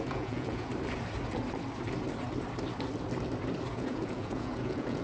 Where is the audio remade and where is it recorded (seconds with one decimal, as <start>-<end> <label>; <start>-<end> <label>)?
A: 0.0-0.7 remade; 0.7-3.7 recorded; 3.7-5.0 remade